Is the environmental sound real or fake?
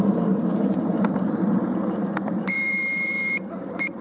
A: fake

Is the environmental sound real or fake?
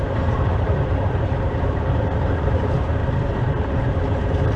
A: fake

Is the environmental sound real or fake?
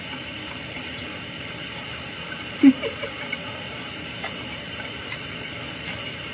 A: fake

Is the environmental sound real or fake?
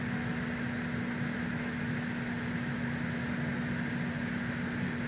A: real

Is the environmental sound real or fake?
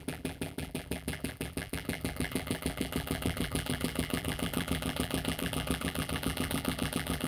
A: fake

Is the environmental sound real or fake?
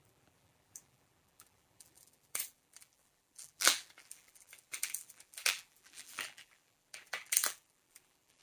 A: fake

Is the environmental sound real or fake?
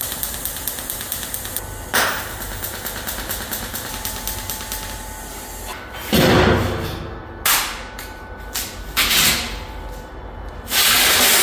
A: real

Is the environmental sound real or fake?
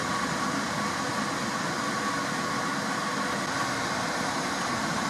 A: real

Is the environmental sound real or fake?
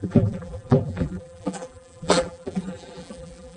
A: fake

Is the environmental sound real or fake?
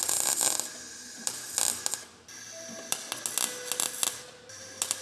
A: real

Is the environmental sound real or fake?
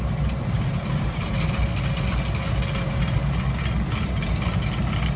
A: real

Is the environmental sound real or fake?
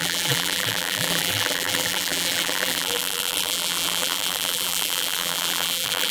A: fake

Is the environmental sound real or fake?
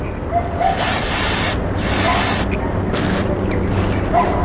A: real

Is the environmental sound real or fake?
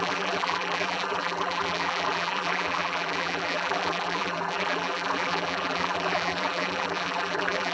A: fake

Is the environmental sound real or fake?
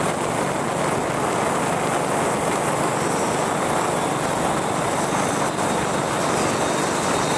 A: real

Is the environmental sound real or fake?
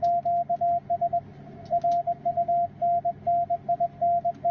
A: real